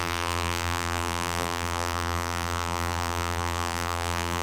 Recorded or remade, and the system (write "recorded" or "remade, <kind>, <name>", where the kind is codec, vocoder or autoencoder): remade, vocoder, BigVGAN v2